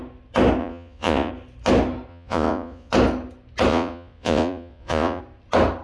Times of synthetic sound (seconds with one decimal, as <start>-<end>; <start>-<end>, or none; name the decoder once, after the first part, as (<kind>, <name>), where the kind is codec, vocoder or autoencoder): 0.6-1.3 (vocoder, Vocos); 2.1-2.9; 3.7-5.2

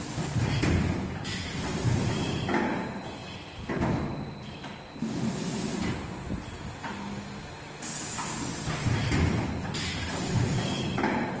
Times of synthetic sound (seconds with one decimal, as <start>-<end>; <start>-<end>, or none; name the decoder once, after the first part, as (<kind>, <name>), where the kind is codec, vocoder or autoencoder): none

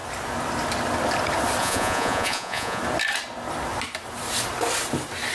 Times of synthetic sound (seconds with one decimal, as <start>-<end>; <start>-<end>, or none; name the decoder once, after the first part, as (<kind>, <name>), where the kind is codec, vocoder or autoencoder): 1.6-2.8 (vocoder, Vocos)

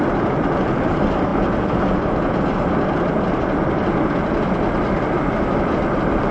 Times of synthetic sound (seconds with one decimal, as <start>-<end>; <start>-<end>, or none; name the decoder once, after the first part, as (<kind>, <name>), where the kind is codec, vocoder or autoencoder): none

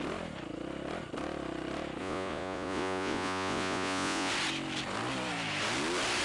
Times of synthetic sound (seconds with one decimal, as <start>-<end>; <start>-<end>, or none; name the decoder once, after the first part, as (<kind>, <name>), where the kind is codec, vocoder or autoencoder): 2.0-4.3 (vocoder, Vocos)

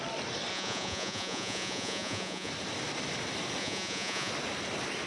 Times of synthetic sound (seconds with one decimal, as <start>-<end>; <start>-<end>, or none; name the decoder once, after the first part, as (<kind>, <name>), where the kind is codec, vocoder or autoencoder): 0.5-2.5 (vocoder, Vocos); 3.6-4.3

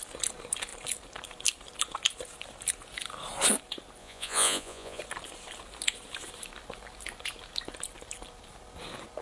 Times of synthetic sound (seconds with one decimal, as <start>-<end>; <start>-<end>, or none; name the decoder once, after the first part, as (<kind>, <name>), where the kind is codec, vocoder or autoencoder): 4.0-5.0 (vocoder, Vocos)